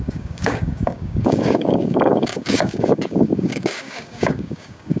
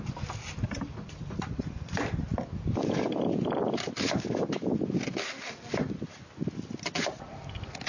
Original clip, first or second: second